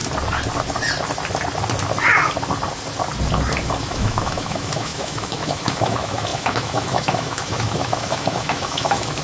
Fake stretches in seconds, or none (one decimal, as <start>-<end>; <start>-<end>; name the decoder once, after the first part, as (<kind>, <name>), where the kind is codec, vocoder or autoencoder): 3.8-9.2 (autoencoder, DAC-VAE)